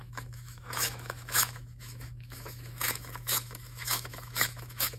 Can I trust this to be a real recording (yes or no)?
no